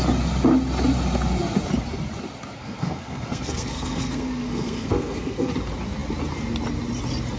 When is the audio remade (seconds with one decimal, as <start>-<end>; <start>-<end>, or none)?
2.6-5.5